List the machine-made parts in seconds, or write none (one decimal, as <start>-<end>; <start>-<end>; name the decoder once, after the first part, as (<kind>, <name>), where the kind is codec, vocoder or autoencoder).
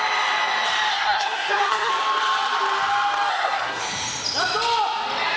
0.9-1.9 (codec, SNAC); 3.3-3.8